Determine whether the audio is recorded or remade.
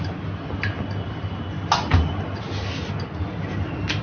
recorded